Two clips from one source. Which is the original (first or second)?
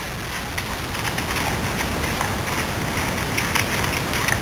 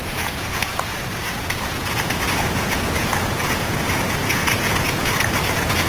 first